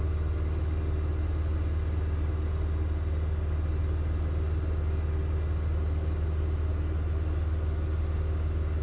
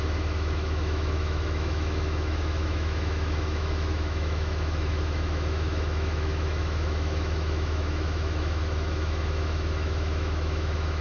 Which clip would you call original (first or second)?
first